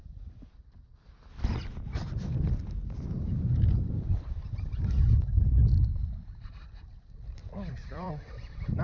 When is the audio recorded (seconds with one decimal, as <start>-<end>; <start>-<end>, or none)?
0.0-7.4; 8.1-8.8